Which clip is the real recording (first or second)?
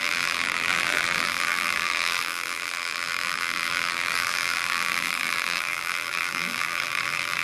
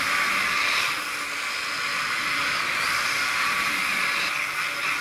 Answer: second